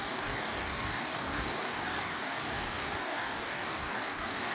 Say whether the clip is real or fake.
fake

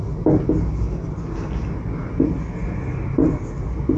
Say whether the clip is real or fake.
real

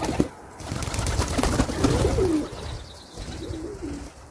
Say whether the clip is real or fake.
real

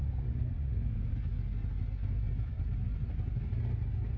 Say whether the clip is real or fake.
real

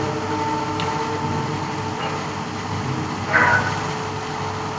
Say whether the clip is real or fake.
real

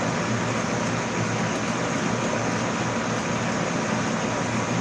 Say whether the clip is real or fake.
real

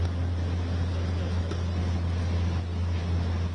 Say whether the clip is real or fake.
real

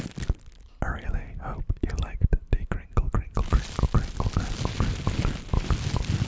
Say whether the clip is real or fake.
real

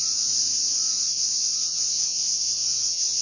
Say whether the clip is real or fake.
fake